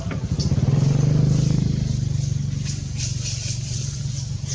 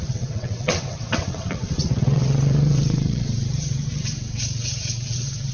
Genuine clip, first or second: first